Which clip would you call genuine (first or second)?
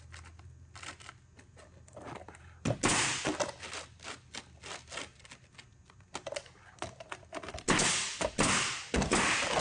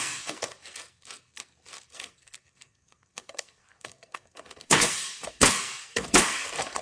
first